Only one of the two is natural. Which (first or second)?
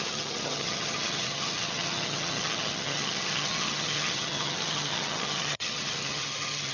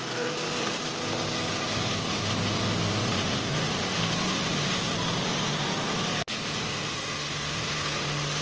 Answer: second